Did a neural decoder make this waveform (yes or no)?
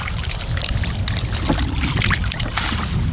no